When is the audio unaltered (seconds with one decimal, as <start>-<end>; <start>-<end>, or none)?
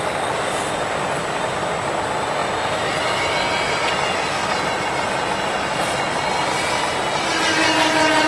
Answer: 0.0-8.3